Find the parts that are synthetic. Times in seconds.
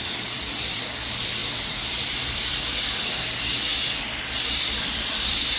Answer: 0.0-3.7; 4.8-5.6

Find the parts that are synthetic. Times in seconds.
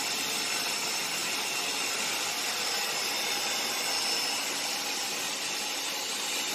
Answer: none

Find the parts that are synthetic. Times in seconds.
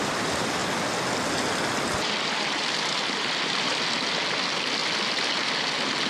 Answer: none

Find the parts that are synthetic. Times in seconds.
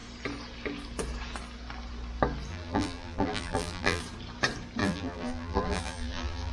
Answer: 2.5-4.0; 4.8-6.5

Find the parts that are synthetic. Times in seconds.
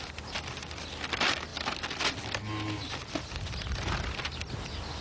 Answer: none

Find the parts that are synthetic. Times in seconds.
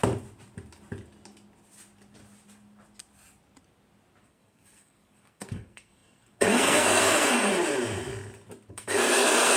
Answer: 4.2-7.5; 8.7-9.6